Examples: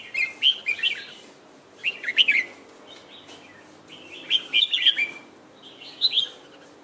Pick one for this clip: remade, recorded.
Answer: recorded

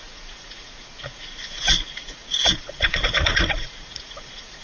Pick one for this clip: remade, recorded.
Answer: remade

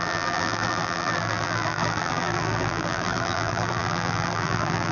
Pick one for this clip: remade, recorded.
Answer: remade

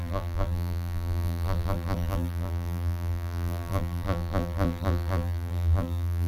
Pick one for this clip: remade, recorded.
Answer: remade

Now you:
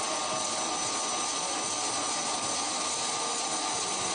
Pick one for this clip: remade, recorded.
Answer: recorded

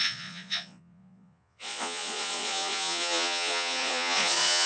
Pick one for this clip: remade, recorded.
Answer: remade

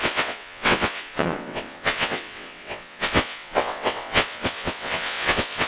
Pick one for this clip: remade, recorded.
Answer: remade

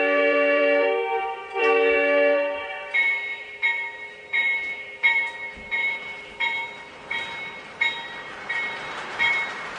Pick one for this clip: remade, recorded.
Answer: remade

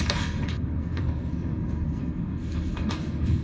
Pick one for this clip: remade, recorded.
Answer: remade